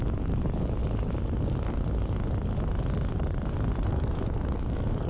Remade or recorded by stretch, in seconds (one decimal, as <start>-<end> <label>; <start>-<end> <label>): 0.0-0.8 remade; 0.8-3.9 recorded; 3.9-5.1 remade